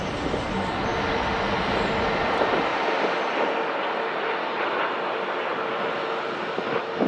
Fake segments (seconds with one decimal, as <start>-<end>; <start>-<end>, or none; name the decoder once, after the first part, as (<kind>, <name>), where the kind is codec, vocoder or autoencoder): none